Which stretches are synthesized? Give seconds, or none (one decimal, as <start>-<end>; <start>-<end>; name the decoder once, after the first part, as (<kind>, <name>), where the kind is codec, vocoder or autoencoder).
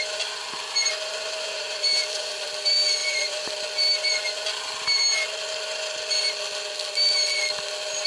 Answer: 1.1-2.5 (vocoder, BigVGAN v2); 3.0-3.5